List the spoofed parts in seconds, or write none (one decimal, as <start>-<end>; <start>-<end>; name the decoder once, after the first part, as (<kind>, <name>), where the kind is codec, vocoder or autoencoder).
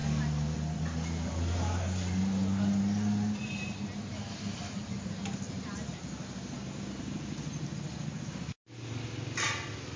none